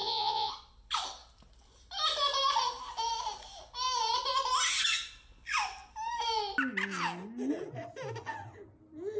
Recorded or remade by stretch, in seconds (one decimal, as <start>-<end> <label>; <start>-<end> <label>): 0.0-0.5 remade; 0.5-9.2 recorded